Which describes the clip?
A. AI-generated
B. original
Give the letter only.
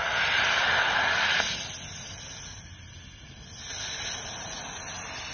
B